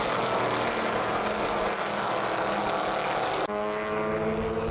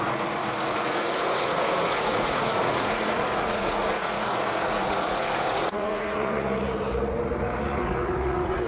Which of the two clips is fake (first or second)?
second